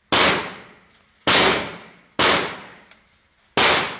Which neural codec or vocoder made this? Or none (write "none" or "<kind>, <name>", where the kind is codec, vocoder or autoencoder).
none